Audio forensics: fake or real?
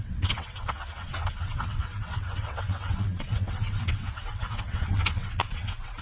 fake